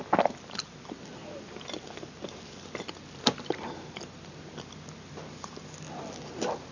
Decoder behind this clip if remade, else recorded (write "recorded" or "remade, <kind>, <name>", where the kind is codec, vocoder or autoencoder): recorded